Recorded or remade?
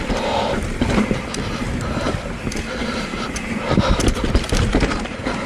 remade